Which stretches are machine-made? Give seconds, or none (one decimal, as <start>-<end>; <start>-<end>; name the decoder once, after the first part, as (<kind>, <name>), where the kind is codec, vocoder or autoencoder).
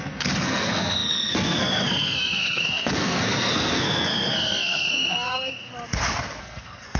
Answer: 0.0-5.7 (codec, SNAC); 6.4-7.0